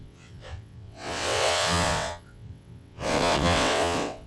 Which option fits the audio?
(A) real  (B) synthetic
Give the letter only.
B